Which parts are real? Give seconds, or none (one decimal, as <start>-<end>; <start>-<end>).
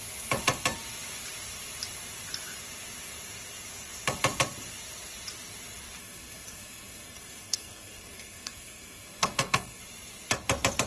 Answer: 0.0-6.0; 9.8-10.9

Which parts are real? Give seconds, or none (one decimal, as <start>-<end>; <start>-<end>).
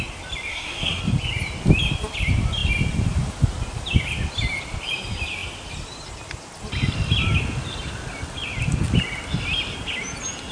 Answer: 0.0-0.5; 1.0-10.5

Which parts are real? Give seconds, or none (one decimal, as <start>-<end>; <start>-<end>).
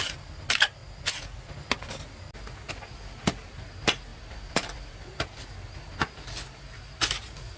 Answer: 0.0-4.1; 5.1-7.6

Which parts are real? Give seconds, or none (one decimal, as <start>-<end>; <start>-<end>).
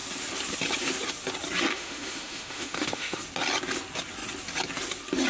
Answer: 0.0-1.7; 3.2-5.3